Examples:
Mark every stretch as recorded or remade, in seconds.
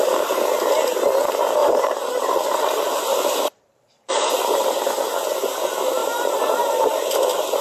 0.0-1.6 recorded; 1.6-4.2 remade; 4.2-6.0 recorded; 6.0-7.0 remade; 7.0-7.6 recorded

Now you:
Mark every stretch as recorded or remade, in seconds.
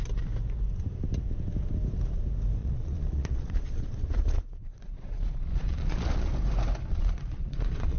0.0-2.6 recorded; 2.6-6.3 remade; 6.3-6.9 recorded; 6.9-8.0 remade